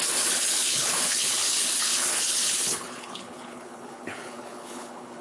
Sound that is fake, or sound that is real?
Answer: fake